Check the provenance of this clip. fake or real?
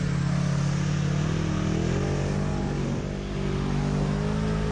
real